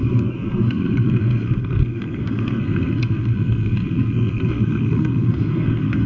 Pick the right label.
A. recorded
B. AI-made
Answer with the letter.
B